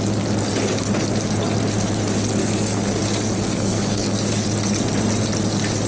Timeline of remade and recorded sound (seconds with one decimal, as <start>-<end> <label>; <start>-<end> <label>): 0.0-2.4 recorded; 2.4-3.0 remade; 3.0-3.4 recorded; 3.4-4.3 remade; 4.3-5.9 recorded